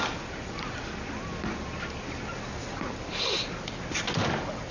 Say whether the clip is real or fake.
real